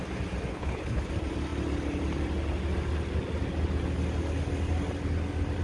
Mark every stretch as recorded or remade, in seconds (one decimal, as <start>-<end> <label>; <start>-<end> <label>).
0.0-0.5 recorded; 0.5-1.1 remade; 1.1-5.6 recorded